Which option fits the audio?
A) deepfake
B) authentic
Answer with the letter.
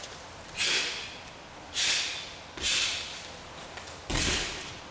B